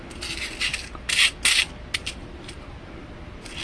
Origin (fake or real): real